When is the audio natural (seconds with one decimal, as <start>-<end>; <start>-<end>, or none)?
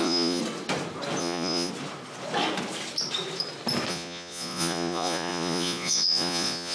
0.4-1.2; 1.7-3.9